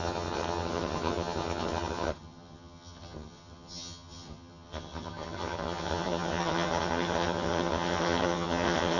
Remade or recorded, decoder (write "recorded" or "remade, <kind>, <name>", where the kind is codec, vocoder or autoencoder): remade, vocoder, HiFi-GAN